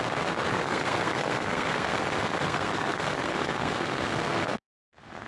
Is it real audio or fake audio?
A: fake